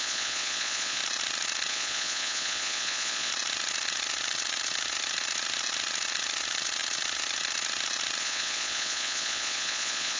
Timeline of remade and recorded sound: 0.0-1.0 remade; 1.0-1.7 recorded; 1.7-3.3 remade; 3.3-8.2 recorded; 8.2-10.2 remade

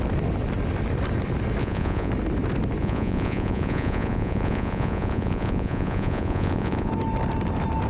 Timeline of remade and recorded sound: 0.0-1.6 recorded; 1.6-2.1 remade; 2.1-2.8 recorded; 2.8-6.9 remade; 6.9-7.9 recorded